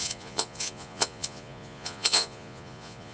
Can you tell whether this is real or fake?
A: fake